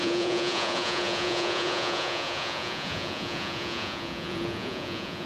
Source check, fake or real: fake